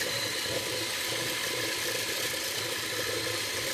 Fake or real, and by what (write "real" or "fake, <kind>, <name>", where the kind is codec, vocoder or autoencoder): real